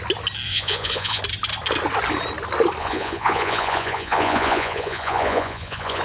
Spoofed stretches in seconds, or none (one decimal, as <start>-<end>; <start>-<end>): 0.5-1.2; 2.8-6.0